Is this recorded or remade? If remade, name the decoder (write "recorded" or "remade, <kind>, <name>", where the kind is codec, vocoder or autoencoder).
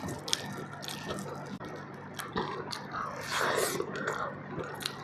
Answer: recorded